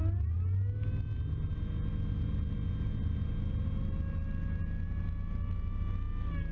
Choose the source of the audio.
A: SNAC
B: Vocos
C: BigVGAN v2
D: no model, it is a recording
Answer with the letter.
D